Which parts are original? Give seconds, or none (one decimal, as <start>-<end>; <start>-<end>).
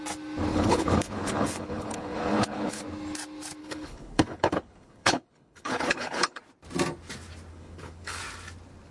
0.0-0.5; 2.8-3.6; 6.4-7.5; 8.2-8.9